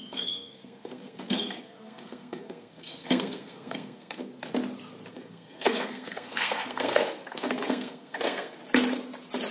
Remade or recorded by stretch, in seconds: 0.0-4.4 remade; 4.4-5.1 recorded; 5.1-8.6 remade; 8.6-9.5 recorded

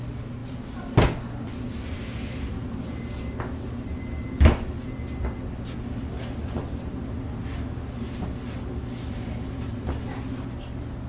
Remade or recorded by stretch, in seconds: 0.0-11.1 recorded

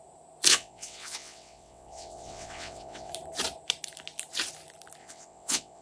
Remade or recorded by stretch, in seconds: 0.0-0.5 recorded; 0.5-3.1 remade; 3.1-5.0 recorded; 5.0-5.8 remade

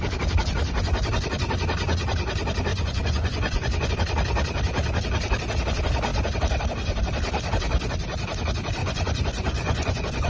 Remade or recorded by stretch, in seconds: 0.0-2.7 recorded; 2.7-3.9 remade; 3.9-8.8 recorded; 8.8-10.3 remade

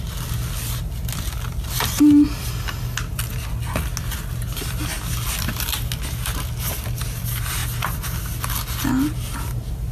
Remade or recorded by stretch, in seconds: 0.0-9.9 recorded